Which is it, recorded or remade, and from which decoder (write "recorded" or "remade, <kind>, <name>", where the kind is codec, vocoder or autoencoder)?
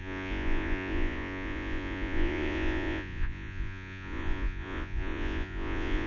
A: remade, vocoder, Vocos